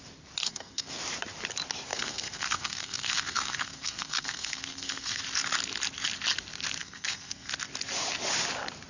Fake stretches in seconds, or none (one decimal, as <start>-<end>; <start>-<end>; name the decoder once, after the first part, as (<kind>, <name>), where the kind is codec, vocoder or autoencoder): 0.4-1.0 (codec, SNAC); 1.9-5.2; 6.8-7.5